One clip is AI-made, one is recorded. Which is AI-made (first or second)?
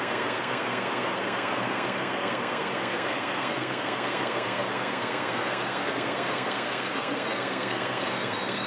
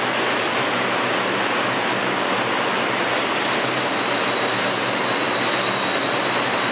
first